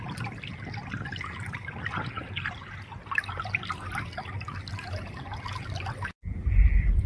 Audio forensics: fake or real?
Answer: real